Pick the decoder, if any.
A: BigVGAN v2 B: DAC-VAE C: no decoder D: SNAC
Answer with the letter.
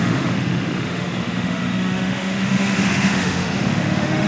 B